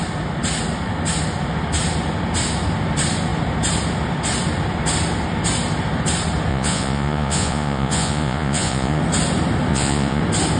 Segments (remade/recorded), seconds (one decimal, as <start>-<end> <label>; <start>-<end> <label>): 0.0-6.5 recorded; 6.5-9.0 remade; 9.0-9.7 recorded; 9.7-10.2 remade; 10.2-10.6 recorded